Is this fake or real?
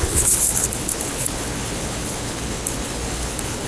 fake